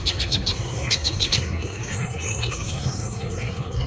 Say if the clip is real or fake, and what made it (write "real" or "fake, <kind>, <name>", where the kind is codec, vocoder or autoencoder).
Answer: fake, codec, SNAC